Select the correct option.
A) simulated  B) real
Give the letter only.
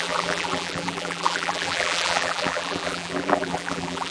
A